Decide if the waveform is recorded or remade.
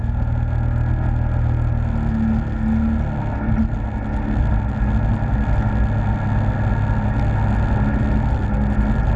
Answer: recorded